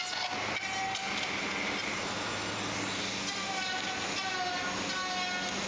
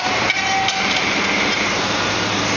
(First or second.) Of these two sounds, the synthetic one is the second